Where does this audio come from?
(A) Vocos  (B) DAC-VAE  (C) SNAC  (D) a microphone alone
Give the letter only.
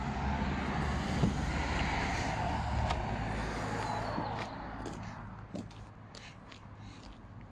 D